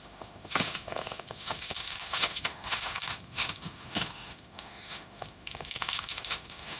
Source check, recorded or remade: remade